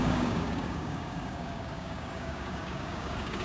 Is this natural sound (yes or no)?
no